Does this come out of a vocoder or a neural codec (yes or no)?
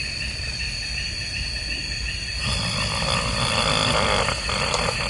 no